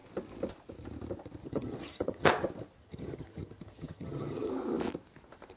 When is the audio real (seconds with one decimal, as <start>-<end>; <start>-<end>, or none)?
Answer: 0.0-1.4; 2.3-2.8; 4.5-5.6